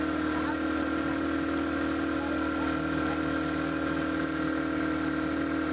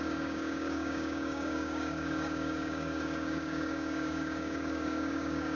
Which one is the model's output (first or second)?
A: second